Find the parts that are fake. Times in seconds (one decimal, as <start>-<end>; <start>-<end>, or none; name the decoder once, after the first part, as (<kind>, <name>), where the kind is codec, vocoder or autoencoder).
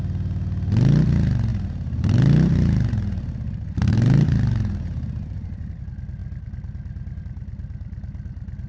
1.5-5.8 (vocoder, BigVGAN v2)